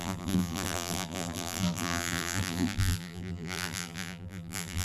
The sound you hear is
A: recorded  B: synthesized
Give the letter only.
B